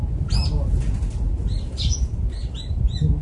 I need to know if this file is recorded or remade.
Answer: recorded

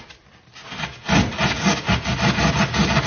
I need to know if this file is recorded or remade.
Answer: recorded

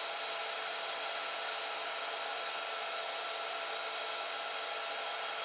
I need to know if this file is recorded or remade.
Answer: recorded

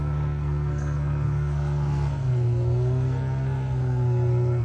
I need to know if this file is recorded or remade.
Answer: remade